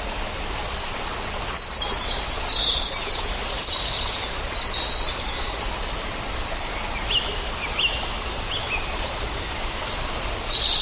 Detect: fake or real real